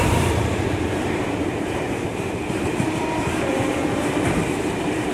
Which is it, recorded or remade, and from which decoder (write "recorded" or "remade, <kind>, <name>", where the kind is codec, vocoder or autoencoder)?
remade, vocoder, BigVGAN v2